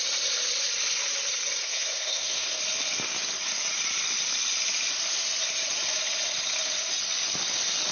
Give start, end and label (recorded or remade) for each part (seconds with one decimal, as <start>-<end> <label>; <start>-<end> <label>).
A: 0.0-1.6 recorded; 1.6-2.6 remade; 2.6-7.9 recorded